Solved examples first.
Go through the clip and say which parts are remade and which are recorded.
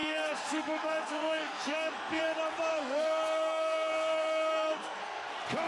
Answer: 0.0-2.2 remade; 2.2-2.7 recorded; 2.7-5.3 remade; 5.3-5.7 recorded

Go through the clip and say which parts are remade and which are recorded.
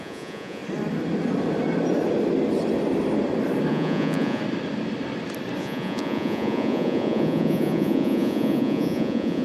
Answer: 0.0-0.6 remade; 0.6-3.7 recorded; 3.7-4.4 remade; 4.4-5.6 recorded; 5.6-9.4 remade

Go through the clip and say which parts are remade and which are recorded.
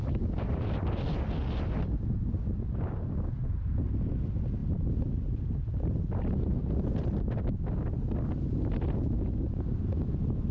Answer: 0.0-10.5 recorded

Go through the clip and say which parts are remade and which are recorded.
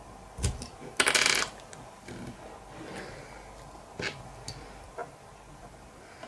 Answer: 0.0-6.3 recorded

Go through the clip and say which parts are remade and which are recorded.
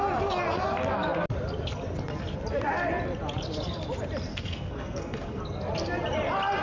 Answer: 0.0-4.3 recorded; 4.3-5.4 remade; 5.4-6.6 recorded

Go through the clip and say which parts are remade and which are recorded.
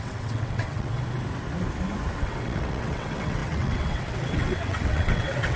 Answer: 0.0-0.9 remade; 0.9-2.2 recorded; 2.2-5.6 remade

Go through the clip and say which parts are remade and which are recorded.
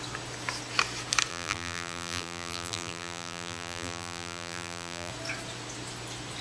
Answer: 0.0-1.3 recorded; 1.3-5.1 remade; 5.1-6.4 recorded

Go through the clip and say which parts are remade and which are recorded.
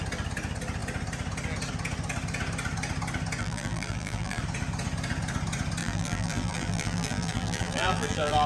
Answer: 0.0-3.4 recorded; 3.4-4.4 remade; 4.4-5.8 recorded; 5.8-8.5 remade